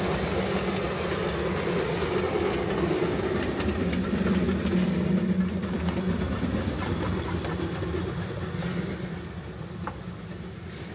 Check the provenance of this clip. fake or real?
real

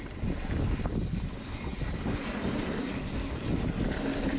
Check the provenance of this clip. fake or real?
real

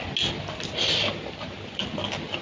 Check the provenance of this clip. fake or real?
real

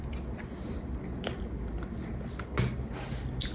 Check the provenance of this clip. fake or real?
real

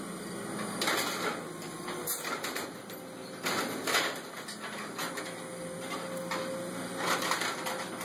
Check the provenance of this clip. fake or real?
real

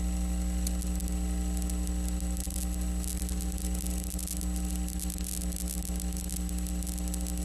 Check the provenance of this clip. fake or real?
real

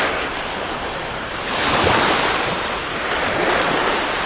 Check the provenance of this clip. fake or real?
real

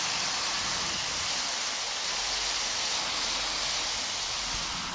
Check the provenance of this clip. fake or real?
real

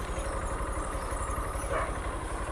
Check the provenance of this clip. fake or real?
real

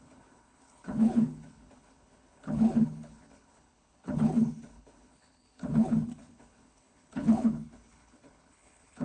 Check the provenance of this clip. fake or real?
fake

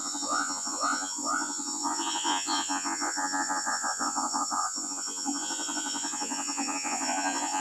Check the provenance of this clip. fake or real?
fake